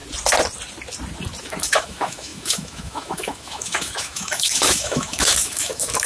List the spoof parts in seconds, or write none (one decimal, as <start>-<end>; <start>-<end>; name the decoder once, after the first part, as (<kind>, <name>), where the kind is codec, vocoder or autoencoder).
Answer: 1.4-6.1 (autoencoder, DAC-VAE)